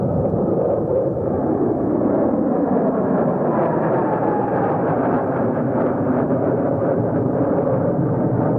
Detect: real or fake fake